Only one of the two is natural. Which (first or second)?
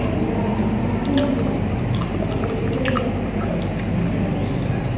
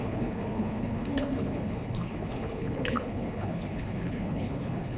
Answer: first